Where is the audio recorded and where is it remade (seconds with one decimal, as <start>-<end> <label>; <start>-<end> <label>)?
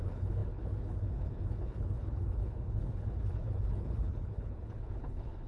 0.0-5.5 remade